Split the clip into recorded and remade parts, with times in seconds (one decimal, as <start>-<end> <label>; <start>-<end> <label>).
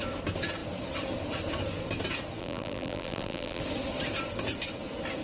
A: 0.0-2.4 recorded; 2.4-3.6 remade; 3.6-5.2 recorded